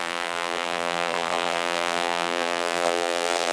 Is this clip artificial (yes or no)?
yes